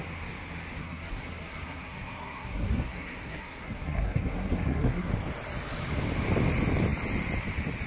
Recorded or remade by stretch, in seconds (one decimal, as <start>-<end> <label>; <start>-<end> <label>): 0.0-0.8 recorded; 0.8-5.1 remade; 5.1-7.9 recorded